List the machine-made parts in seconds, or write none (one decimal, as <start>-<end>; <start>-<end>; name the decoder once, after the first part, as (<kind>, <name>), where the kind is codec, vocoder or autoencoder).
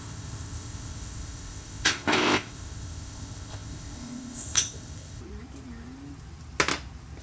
0.0-5.2 (codec, ZipCodec)